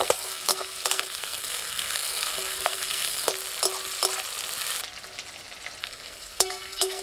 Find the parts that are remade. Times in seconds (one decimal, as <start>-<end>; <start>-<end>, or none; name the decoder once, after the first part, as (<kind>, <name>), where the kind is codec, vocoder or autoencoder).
0.0-3.3 (codec, SNAC); 5.8-7.0